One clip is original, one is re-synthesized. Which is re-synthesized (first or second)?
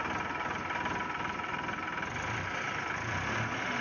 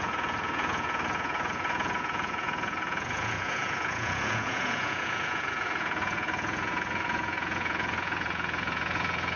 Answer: second